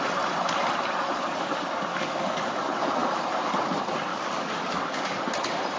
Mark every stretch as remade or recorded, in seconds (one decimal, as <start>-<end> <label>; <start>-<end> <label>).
0.0-1.9 recorded; 1.9-2.5 remade; 2.5-4.1 recorded; 4.1-5.2 remade; 5.2-5.8 recorded